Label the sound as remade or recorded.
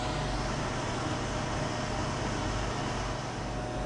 recorded